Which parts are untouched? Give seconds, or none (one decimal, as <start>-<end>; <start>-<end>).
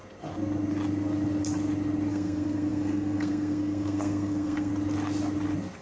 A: 0.0-2.1; 4.7-5.8